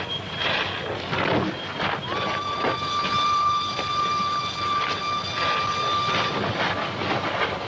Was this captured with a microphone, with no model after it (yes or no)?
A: yes